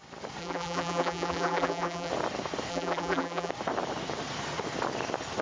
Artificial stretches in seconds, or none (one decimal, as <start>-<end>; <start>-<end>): 0.4-2.1; 2.7-3.5